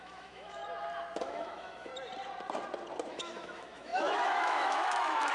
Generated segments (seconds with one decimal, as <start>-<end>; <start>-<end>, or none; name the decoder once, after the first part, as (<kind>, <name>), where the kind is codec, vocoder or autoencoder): 0.0-0.6 (autoencoder, DAC-VAE); 1.2-1.9; 3.1-5.3